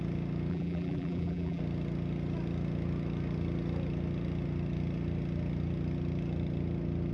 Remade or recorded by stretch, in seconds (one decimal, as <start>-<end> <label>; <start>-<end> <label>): 0.0-0.5 recorded; 0.5-1.6 remade; 1.6-7.1 recorded

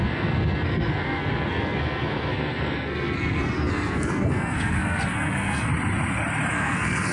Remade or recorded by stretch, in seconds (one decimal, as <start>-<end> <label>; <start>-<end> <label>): 0.0-5.7 remade; 5.7-6.5 recorded; 6.5-7.1 remade

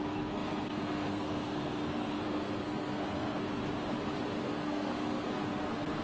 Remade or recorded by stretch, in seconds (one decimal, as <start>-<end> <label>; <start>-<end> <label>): 0.0-3.6 remade; 3.6-4.4 recorded; 4.4-6.0 remade

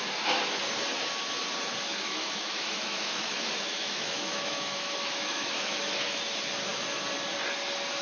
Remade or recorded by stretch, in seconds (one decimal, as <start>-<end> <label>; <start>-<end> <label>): 0.0-1.9 recorded; 1.9-6.2 remade; 6.2-8.0 recorded

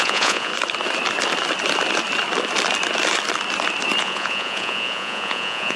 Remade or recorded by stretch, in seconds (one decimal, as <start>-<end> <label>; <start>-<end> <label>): 0.0-0.5 remade; 0.5-4.0 recorded; 4.0-5.8 remade

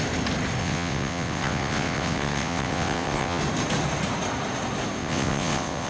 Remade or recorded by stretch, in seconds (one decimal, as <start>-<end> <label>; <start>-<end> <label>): 0.0-0.6 recorded; 0.6-3.4 remade; 3.4-5.0 recorded; 5.0-5.9 remade

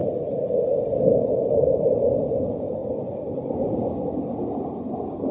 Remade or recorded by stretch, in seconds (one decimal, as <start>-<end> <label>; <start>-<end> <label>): 0.0-5.3 recorded